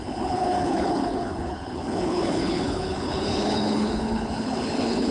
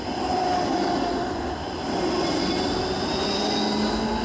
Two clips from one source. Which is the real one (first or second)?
second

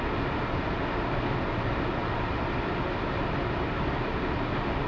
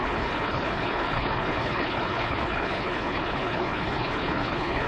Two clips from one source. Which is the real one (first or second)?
first